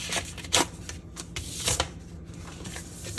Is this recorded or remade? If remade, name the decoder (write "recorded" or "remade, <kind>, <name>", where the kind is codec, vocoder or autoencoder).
recorded